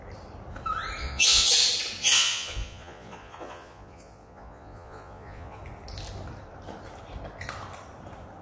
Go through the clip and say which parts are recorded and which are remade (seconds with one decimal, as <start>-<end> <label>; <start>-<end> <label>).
0.0-1.0 recorded; 1.0-1.5 remade; 1.5-2.0 recorded; 2.0-5.6 remade; 5.6-8.4 recorded